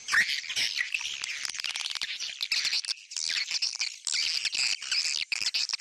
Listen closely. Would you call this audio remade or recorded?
recorded